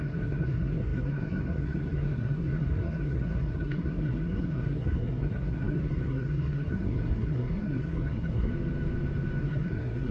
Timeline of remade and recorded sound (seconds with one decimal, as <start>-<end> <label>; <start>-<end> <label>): 0.0-8.5 remade; 8.5-9.4 recorded; 9.4-10.1 remade